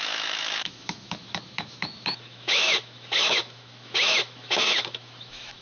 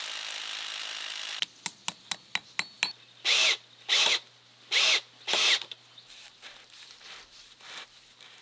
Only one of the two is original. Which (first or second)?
second